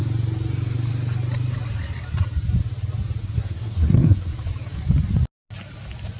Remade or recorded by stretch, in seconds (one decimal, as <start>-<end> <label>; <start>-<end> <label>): 0.0-3.2 recorded; 3.2-4.3 remade; 4.3-6.2 recorded